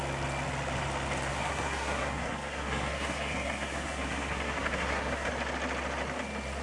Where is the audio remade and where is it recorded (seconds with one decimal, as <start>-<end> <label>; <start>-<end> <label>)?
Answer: 0.0-1.3 recorded; 1.3-5.3 remade; 5.3-6.6 recorded